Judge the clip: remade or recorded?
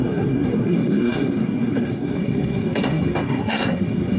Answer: remade